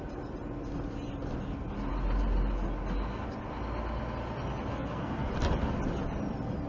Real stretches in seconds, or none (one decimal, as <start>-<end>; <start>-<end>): 0.0-4.7; 5.3-6.7